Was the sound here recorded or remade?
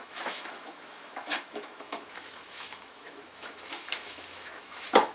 remade